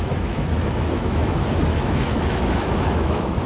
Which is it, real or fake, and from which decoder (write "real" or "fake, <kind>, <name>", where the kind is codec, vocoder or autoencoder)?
fake, autoencoder, DAC-VAE